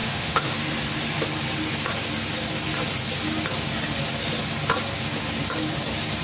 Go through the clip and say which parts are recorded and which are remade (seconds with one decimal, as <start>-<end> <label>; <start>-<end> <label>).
0.0-0.5 remade; 0.5-6.2 recorded